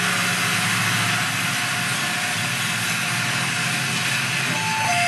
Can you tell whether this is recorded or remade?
recorded